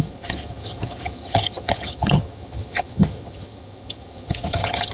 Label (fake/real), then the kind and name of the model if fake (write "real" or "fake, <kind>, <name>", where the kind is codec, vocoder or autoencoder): fake, vocoder, HiFi-GAN